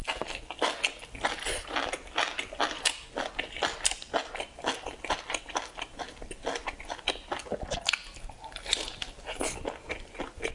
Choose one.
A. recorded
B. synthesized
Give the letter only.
A